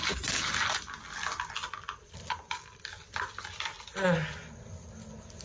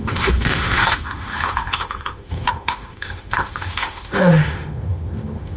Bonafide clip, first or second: first